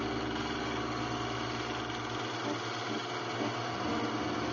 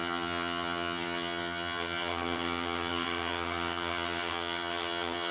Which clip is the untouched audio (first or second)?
first